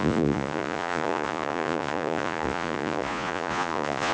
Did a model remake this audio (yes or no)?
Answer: yes